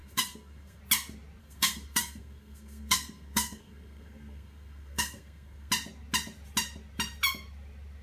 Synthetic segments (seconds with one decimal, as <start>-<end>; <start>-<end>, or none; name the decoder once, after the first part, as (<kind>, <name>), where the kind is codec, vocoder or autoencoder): 0.0-0.8 (codec, SNAC); 1.4-5.7